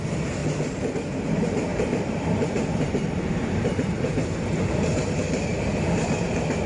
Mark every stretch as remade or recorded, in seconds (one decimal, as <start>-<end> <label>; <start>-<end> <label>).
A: 0.0-1.7 recorded; 1.7-5.7 remade; 5.7-6.7 recorded